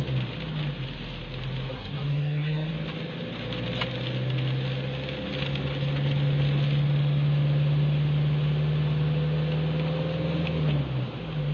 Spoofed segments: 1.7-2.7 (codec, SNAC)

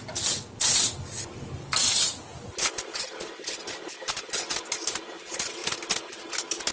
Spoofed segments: none

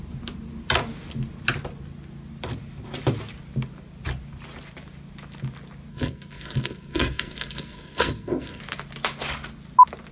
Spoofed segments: 5.9-8.6 (codec, SNAC)

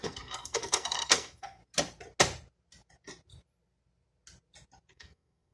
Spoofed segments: 0.0-1.6 (codec, SNAC); 4.9-5.5

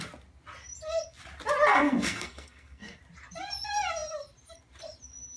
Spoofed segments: 1.7-3.0 (codec, SNAC)